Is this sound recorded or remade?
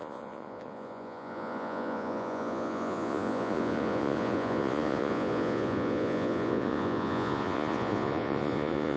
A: remade